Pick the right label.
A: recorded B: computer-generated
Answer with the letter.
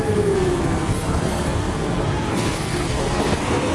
B